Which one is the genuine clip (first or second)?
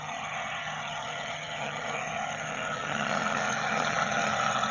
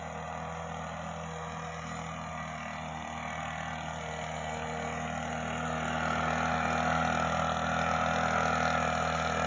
second